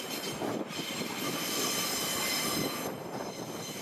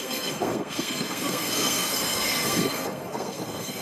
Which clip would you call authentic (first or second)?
first